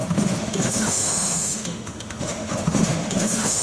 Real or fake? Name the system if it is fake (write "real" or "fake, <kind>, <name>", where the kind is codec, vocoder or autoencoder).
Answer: fake, autoencoder, DAC-VAE